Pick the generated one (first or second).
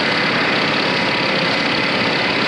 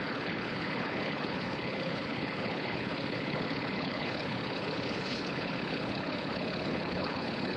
second